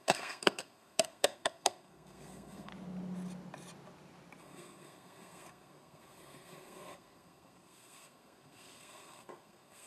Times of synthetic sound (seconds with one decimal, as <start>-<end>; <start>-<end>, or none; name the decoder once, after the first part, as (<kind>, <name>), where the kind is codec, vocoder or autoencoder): 0.0-2.7 (codec, SNAC); 4.4-9.9